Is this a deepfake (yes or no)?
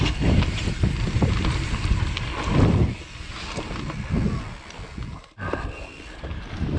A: no